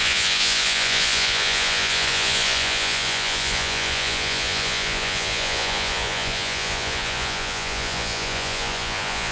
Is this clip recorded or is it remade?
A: remade